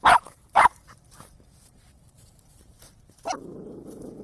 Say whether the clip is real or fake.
fake